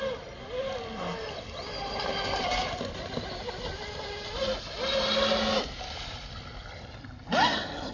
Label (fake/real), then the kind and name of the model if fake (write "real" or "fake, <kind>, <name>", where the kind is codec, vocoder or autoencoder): real